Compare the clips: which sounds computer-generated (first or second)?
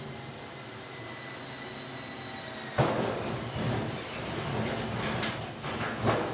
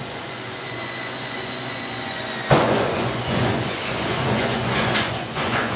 second